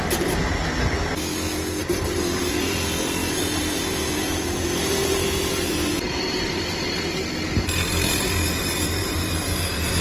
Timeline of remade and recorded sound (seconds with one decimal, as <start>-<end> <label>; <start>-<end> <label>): 0.0-1.8 recorded; 1.8-2.6 remade; 2.6-3.2 recorded; 3.2-7.3 remade; 7.3-9.0 recorded; 9.0-10.0 remade